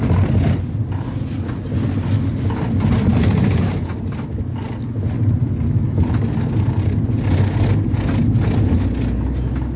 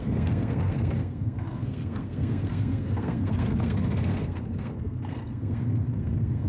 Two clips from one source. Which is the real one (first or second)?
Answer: first